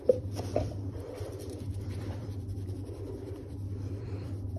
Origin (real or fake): fake